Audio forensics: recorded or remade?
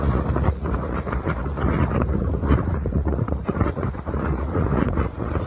remade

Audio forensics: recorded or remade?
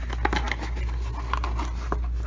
recorded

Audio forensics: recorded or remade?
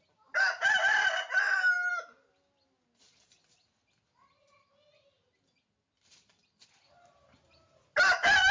recorded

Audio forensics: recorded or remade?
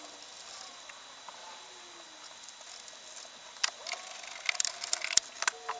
recorded